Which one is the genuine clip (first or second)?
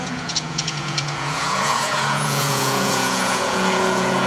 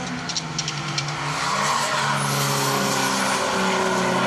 second